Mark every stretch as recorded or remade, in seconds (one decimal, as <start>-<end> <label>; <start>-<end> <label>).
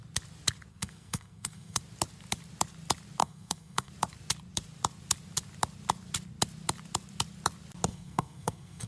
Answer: 0.0-0.7 recorded; 0.7-1.8 remade; 1.8-3.2 recorded; 3.2-3.9 remade; 3.9-7.9 recorded; 7.9-8.9 remade